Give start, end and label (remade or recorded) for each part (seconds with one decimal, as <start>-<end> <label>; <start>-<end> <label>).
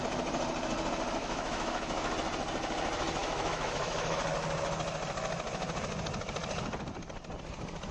0.0-1.2 recorded; 1.2-2.1 remade; 2.1-3.2 recorded; 3.2-4.2 remade; 4.2-7.9 recorded